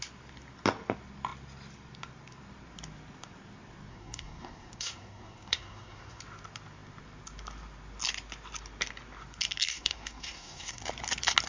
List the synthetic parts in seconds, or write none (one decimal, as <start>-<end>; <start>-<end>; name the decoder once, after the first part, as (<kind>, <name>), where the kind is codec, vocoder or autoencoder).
3.9-6.2 (codec, SNAC); 9.7-10.8